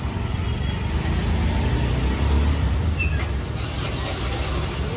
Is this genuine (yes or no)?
yes